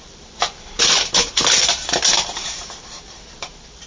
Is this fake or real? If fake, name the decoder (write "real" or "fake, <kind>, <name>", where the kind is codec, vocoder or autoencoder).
fake, vocoder, BigVGAN v2